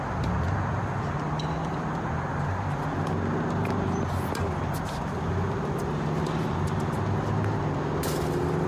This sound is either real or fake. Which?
real